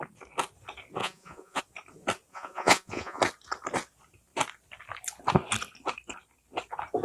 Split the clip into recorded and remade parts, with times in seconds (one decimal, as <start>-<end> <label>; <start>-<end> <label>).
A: 0.0-1.0 recorded; 1.0-1.6 remade; 1.6-2.3 recorded; 2.3-3.2 remade; 3.2-7.0 recorded